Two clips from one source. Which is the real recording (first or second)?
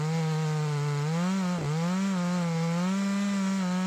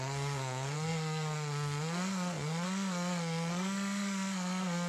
first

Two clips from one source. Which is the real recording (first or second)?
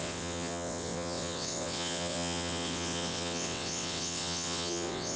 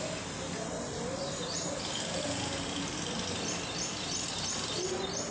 second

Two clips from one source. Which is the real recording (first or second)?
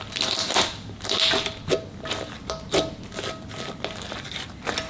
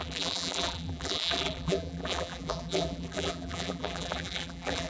first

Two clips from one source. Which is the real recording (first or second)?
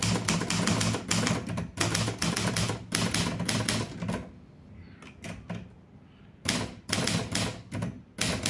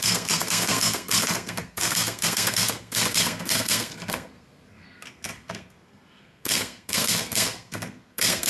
first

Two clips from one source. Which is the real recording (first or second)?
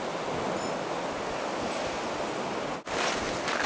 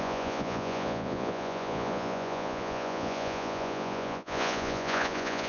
first